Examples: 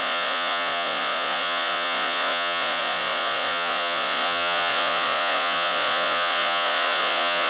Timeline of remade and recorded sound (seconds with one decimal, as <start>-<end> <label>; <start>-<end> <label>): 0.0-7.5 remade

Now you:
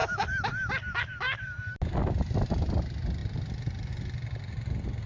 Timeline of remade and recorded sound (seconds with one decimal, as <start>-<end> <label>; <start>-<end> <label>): 0.0-5.1 recorded

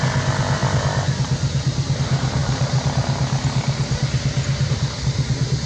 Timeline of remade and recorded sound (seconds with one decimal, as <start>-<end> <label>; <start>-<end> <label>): 0.0-5.7 recorded

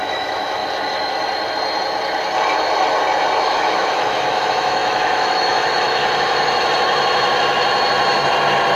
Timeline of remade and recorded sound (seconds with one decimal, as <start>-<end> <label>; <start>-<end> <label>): 0.0-0.6 remade; 0.6-3.4 recorded; 3.4-6.0 remade; 6.0-8.8 recorded